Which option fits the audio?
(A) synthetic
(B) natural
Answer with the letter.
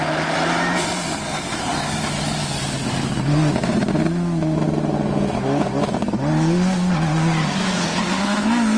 B